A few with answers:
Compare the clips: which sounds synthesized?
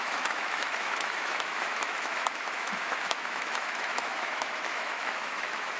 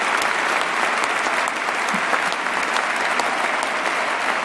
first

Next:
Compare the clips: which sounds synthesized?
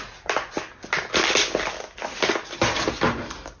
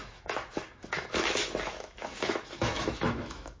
second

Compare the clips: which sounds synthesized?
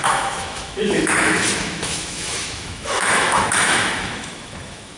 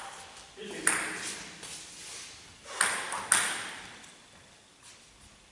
first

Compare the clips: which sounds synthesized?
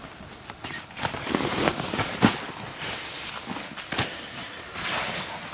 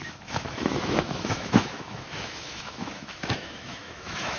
second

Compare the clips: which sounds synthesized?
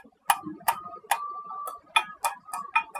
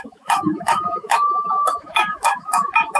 second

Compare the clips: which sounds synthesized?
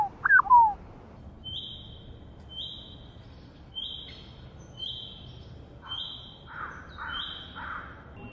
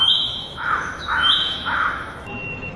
second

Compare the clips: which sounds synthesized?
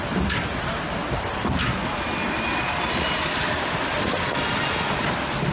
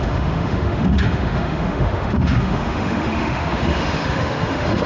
second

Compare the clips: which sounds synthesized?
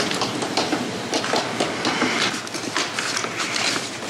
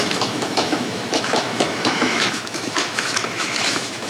second